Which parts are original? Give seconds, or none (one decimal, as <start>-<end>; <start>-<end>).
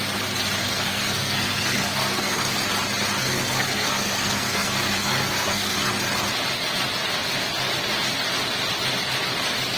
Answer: 0.0-0.6; 2.6-3.2; 5.9-9.8